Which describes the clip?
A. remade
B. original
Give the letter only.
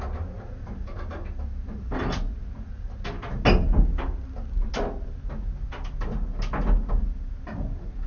B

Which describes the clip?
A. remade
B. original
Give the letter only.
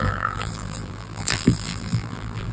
A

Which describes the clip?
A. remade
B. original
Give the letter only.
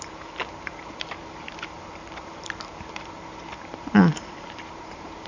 A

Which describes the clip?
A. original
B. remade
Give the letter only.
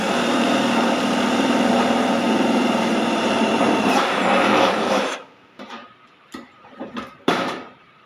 B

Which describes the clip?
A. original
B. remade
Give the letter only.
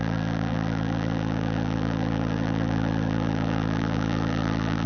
B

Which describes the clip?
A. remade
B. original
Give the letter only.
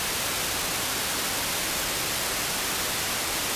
B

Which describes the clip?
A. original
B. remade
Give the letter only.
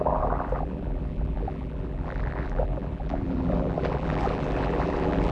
B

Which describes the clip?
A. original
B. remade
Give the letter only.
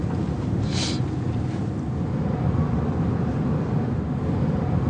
A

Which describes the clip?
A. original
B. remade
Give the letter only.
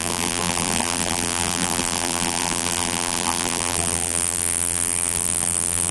B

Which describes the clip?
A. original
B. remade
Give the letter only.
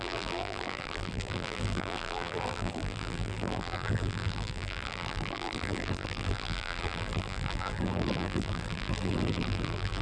B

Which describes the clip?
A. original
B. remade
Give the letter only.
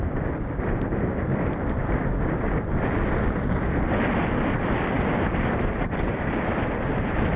B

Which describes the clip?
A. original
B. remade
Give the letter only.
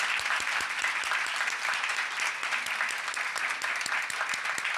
A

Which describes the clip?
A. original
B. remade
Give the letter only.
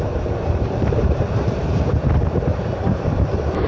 B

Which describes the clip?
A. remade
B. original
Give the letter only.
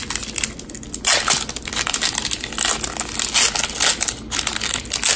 B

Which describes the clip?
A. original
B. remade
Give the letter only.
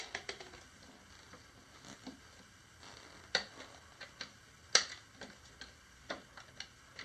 A